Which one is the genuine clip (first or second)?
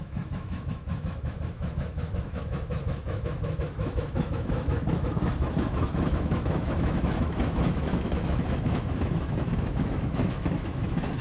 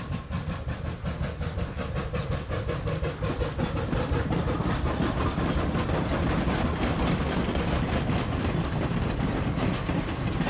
second